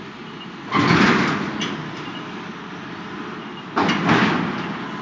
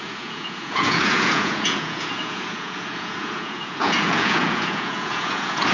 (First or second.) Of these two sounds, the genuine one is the first